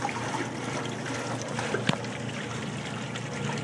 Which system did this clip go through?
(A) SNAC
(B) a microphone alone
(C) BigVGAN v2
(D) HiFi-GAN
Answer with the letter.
B